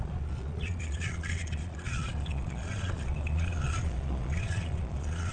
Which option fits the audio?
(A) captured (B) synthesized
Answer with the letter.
B